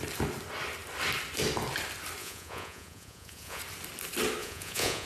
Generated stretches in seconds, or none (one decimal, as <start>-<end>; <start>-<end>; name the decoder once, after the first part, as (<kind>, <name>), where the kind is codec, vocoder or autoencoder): 2.2-3.6 (vocoder, Vocos); 4.4-5.1